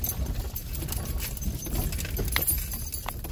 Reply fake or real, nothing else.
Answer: real